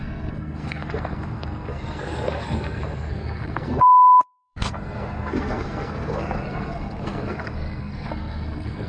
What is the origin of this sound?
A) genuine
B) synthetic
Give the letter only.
B